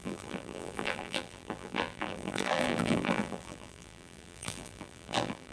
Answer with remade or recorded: remade